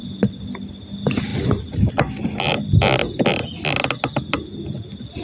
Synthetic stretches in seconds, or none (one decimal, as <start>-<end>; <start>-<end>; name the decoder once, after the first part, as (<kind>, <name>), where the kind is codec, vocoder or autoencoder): none